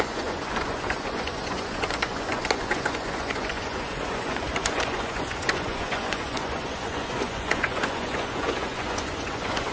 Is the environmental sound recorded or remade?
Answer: remade